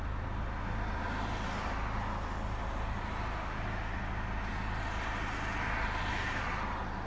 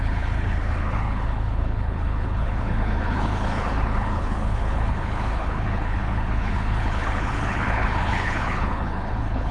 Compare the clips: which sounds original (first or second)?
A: first